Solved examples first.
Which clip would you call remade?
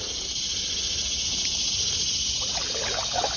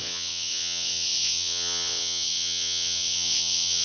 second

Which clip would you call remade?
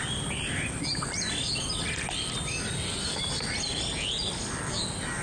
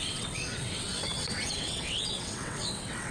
second